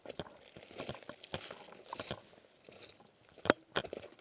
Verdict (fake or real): real